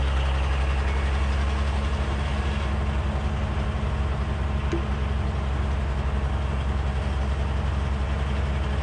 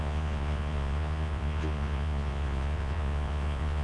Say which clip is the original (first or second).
first